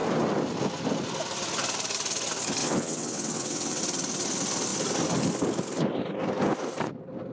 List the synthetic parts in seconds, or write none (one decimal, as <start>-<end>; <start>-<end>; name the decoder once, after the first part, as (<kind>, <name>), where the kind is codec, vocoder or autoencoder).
2.6-3.8 (vocoder, WaveNeXt)